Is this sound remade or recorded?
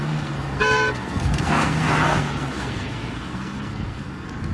remade